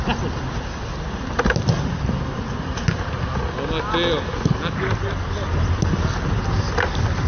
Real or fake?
real